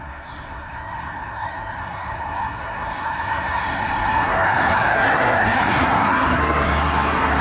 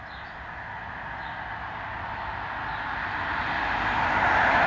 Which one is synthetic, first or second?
first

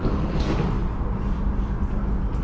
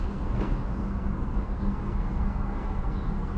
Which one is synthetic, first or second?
second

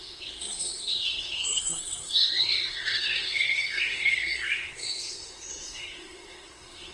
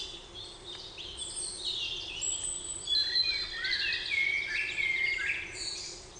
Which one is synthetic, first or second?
first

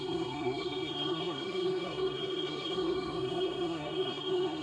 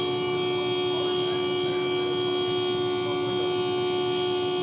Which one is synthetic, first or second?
first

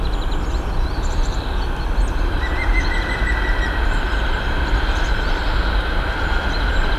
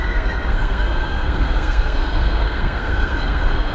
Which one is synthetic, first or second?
second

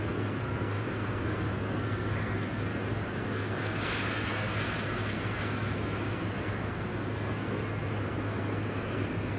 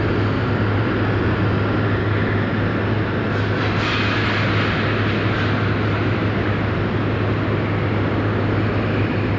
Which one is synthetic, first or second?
first